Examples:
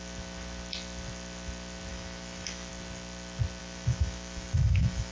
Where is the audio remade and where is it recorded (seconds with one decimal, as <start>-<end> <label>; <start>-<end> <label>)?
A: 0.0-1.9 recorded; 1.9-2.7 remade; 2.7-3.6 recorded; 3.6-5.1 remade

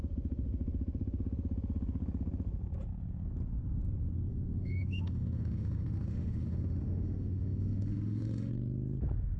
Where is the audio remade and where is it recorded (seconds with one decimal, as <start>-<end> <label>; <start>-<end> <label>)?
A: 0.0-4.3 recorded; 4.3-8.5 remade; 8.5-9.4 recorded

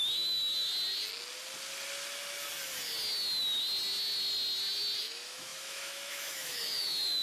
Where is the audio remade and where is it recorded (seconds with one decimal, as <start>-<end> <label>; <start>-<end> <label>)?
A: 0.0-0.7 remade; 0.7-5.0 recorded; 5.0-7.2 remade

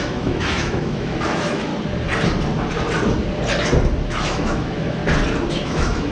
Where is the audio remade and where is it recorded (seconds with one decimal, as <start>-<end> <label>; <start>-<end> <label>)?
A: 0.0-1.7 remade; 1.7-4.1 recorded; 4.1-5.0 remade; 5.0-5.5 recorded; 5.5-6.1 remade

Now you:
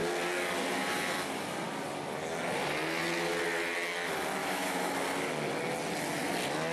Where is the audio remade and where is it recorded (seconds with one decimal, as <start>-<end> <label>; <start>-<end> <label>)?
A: 0.0-4.4 recorded; 4.4-4.9 remade; 4.9-6.7 recorded

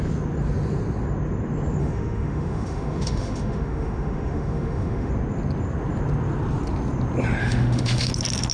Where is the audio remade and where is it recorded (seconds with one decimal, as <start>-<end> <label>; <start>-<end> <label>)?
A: 0.0-1.8 recorded; 1.8-5.1 remade; 5.1-7.4 recorded; 7.4-8.1 remade; 8.1-8.5 recorded